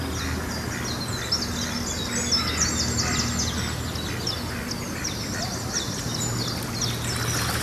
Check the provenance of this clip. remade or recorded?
recorded